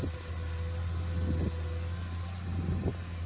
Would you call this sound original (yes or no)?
yes